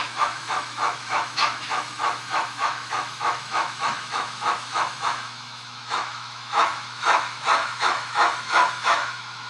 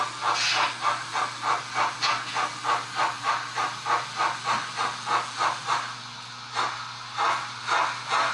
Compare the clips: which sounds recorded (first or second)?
second